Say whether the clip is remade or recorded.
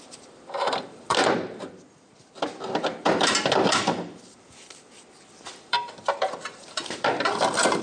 remade